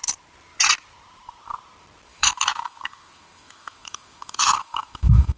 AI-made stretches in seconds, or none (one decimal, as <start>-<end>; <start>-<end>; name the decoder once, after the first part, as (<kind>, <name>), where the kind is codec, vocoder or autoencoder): 2.1-5.4 (autoencoder, DAC-VAE)